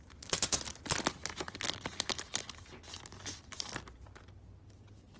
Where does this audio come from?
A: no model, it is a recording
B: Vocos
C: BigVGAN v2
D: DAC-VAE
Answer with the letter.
A